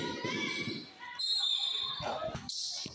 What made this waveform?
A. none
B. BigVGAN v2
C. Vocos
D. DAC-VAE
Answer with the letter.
A